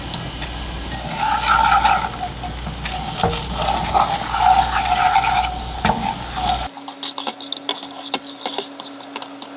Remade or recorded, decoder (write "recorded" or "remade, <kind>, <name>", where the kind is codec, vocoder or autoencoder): recorded